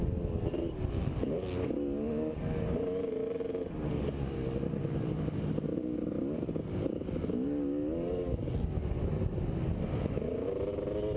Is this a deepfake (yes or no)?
no